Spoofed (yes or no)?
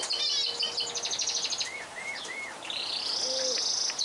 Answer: no